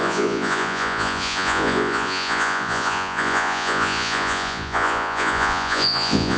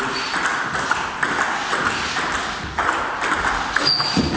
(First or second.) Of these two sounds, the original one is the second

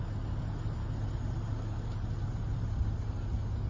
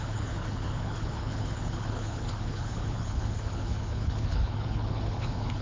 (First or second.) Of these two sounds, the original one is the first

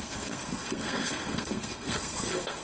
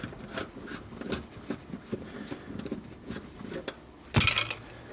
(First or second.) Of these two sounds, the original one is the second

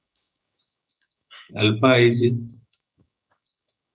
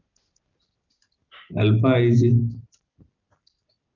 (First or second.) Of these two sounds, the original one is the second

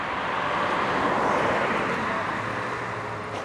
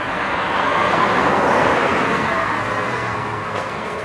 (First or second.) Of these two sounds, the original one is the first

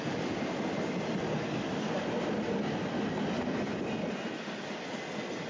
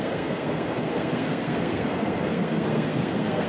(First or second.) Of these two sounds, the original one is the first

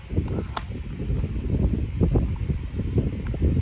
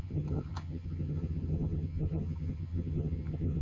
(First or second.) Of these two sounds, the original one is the first